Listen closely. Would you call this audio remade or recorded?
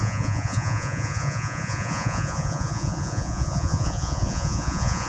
remade